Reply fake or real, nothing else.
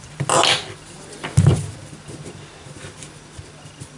real